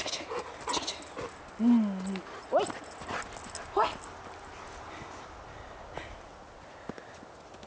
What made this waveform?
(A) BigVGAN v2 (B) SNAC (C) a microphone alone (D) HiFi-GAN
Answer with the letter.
C